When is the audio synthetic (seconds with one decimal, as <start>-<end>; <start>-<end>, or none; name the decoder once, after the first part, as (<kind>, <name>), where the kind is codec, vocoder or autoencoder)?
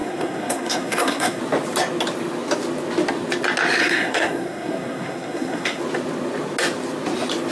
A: 0.0-1.4 (codec, SNAC); 3.8-5.8